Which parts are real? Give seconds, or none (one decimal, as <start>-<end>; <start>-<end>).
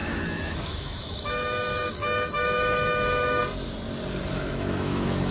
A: 3.4-4.3